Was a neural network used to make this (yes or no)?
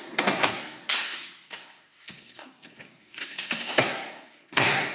yes